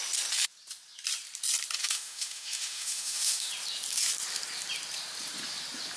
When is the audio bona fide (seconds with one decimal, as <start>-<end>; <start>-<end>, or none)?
0.0-1.8; 3.5-6.0